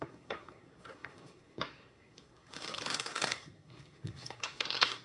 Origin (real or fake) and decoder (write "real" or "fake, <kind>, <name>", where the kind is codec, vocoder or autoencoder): fake, codec, SNAC